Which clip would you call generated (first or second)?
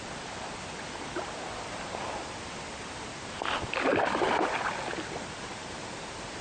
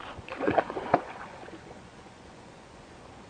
second